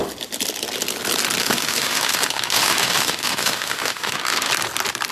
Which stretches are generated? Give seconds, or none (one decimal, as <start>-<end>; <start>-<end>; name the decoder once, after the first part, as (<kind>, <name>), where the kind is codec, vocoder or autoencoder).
1.4-4.5 (autoencoder, DAC-VAE)